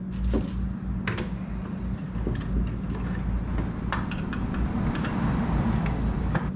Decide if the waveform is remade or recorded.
recorded